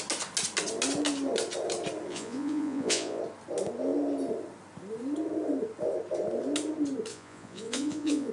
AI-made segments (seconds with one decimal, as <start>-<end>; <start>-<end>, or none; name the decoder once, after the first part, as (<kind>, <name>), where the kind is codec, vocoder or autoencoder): 2.1-3.2 (vocoder, Vocos); 7.1-8.3